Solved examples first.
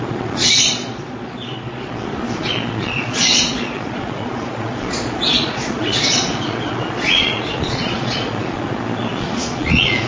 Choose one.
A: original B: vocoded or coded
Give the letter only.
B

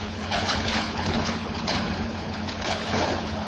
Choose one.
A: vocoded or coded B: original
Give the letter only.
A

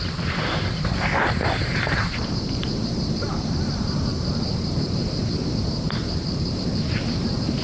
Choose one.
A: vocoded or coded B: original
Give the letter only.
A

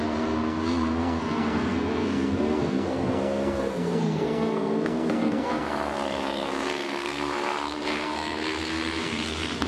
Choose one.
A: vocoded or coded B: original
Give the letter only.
A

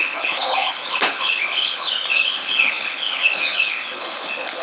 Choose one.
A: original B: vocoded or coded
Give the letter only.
B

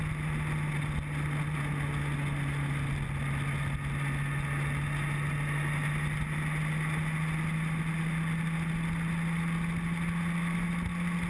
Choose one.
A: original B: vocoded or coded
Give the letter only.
A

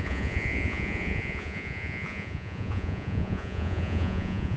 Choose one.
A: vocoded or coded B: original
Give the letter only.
A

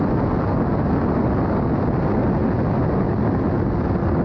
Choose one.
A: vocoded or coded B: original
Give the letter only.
B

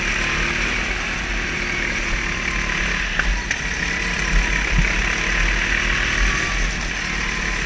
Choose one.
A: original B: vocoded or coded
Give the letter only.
A